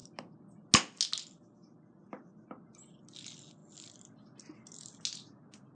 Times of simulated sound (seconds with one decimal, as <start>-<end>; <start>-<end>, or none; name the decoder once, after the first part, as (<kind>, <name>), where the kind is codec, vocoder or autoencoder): none